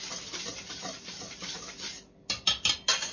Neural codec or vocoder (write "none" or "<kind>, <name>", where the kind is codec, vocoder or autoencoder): none